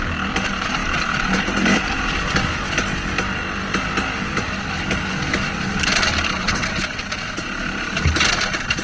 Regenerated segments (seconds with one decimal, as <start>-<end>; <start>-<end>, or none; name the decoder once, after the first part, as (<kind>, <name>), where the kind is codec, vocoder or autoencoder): 6.4-7.0 (vocoder, WaveNeXt)